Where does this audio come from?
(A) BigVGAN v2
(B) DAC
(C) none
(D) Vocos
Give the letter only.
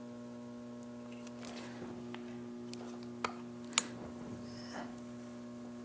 C